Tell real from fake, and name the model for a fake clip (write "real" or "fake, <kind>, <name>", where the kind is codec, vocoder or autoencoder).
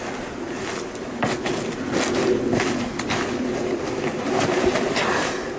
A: real